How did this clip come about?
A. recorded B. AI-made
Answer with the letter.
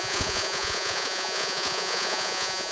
B